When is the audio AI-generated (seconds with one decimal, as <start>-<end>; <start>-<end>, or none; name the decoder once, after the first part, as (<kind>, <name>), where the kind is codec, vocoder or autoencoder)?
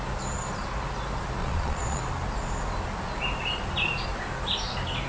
1.4-2.0 (vocoder, Vocos)